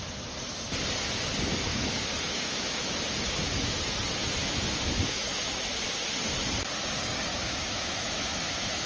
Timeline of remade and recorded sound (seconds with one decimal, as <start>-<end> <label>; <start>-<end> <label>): 0.0-1.7 recorded; 1.7-3.8 remade; 3.8-4.4 recorded; 4.4-5.8 remade; 5.8-7.3 recorded; 7.3-8.9 remade